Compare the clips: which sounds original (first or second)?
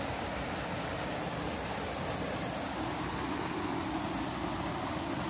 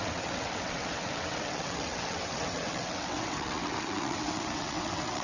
first